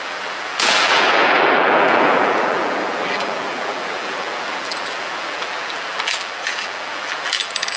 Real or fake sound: fake